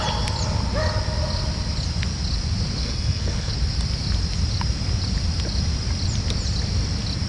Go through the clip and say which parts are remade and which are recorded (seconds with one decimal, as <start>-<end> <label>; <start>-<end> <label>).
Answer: 0.0-2.8 recorded; 2.8-3.5 remade; 3.5-7.3 recorded